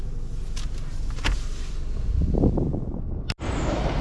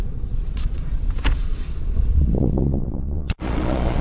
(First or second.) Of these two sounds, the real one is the first